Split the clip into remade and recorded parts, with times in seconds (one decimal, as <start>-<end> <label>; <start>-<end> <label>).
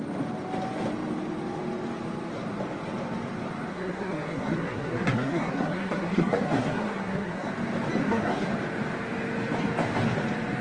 0.0-3.7 recorded; 3.7-7.5 remade; 7.5-8.0 recorded; 8.0-8.5 remade; 8.5-10.6 recorded